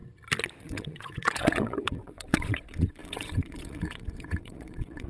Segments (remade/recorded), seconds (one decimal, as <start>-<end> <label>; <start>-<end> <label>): 0.0-0.6 recorded; 0.6-5.1 remade